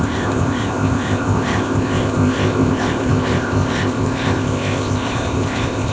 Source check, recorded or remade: remade